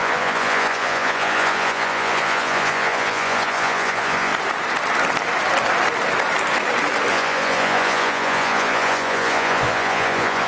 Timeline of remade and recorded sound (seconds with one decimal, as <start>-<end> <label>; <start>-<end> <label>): 0.0-4.3 remade; 4.3-7.1 recorded; 7.1-10.5 remade